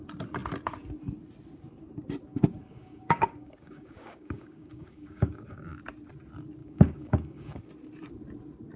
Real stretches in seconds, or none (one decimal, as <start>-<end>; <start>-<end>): 0.0-2.3; 5.8-6.6; 7.7-8.8